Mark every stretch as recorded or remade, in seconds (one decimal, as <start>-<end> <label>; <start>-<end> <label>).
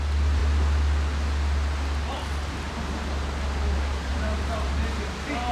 0.0-4.1 recorded; 4.1-4.8 remade; 4.8-5.5 recorded